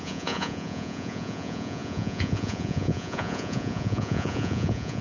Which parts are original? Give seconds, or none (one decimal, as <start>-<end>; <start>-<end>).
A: none